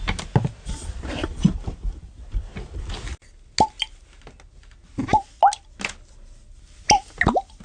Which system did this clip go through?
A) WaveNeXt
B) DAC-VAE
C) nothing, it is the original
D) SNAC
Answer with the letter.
C